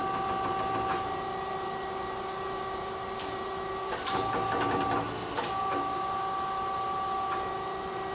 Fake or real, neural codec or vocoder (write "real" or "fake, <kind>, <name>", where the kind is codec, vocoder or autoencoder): real